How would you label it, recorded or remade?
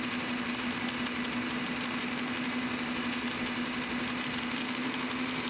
recorded